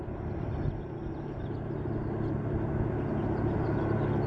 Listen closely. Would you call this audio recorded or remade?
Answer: recorded